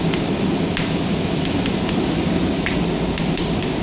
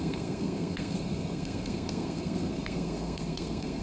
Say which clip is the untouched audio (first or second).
first